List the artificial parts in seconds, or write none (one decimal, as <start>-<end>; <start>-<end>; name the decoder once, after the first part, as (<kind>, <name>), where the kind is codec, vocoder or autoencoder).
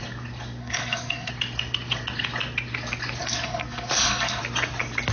0.6-1.3 (codec, SNAC); 3.2-4.4